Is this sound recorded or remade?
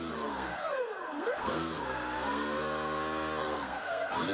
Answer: remade